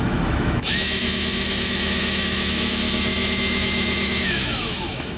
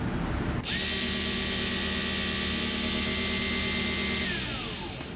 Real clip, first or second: second